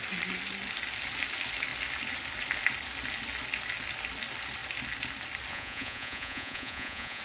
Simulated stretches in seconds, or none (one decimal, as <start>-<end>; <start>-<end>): 5.5-7.2